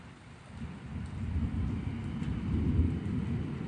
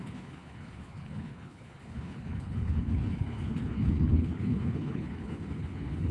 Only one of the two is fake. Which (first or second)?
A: second